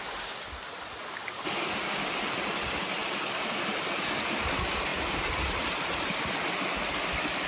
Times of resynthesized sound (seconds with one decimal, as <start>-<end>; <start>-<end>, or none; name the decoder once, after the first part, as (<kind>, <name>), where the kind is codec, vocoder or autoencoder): 4.9-5.7 (vocoder, BigVGAN v2)